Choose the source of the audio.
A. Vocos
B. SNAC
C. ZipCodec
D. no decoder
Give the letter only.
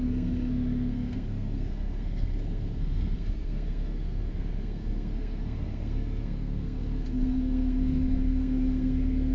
B